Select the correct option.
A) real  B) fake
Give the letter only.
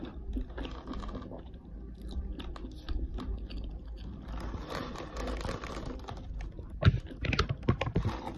A